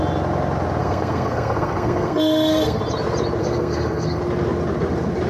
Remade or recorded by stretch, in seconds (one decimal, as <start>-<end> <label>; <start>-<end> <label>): 0.0-0.8 recorded; 0.8-2.8 remade; 2.8-3.4 recorded; 3.4-4.2 remade; 4.2-5.3 recorded